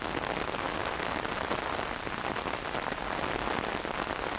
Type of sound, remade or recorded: recorded